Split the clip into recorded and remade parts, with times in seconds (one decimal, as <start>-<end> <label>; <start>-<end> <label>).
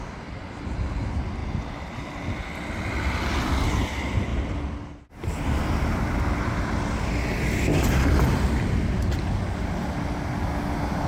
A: 0.0-11.1 recorded